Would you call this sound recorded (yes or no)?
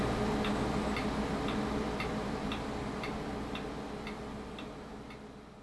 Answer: yes